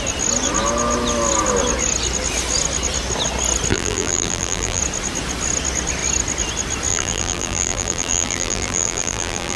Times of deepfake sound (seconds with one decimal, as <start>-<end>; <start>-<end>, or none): 3.7-4.8; 6.9-9.6